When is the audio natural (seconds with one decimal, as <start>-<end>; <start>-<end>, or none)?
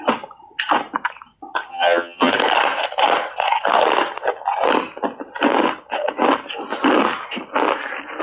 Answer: 0.0-1.7; 2.3-8.2